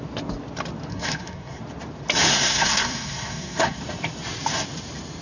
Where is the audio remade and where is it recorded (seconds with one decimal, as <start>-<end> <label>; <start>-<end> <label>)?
0.0-0.9 recorded; 0.9-1.6 remade; 1.6-2.3 recorded; 2.3-3.8 remade; 3.8-5.2 recorded